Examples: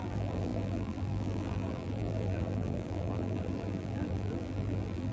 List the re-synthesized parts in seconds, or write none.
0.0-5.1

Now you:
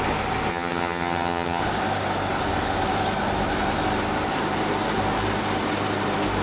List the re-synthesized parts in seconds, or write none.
0.5-1.6

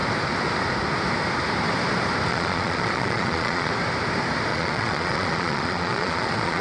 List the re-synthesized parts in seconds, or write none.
2.3-3.7; 4.5-6.6

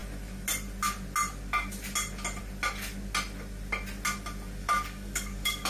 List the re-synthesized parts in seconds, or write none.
4.6-5.7

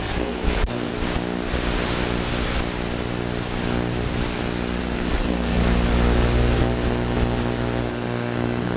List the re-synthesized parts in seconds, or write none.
0.0-0.9; 4.8-5.6; 7.8-8.8